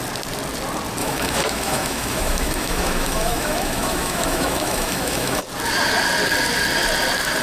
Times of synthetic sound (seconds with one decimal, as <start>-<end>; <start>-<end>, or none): 1.0-5.4